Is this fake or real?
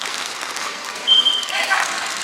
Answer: fake